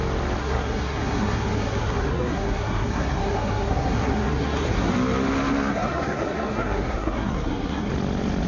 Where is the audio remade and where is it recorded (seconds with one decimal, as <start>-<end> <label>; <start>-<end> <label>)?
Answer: 0.0-0.4 recorded; 0.4-4.9 remade; 4.9-5.7 recorded; 5.7-7.9 remade; 7.9-8.5 recorded